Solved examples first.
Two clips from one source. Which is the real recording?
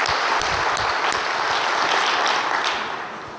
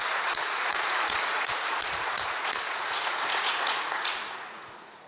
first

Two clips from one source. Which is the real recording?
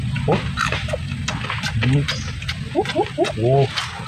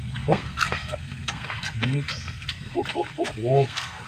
first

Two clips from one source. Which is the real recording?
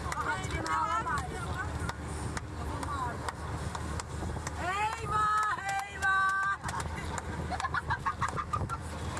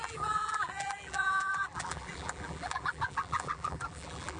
first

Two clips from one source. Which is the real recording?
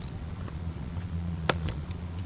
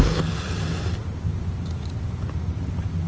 second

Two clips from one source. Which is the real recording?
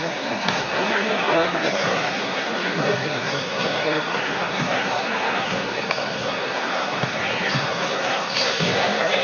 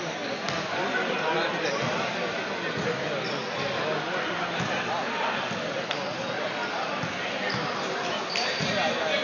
second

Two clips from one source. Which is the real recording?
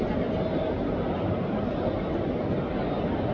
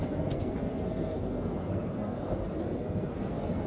first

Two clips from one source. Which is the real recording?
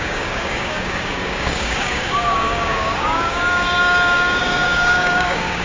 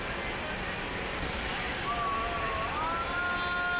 second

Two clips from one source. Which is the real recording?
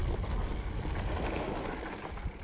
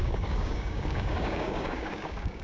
first